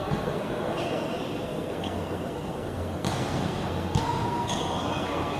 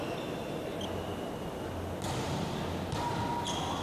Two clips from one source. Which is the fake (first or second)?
first